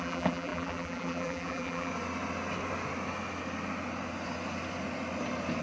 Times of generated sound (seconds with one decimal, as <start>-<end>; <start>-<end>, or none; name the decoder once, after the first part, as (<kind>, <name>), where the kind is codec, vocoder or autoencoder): 0.0-1.9 (vocoder, BigVGAN v2)